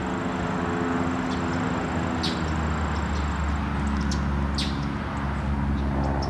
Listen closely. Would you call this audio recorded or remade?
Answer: recorded